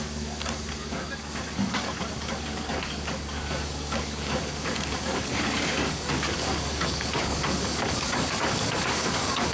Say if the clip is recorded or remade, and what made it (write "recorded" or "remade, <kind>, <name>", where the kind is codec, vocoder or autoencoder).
remade, codec, DAC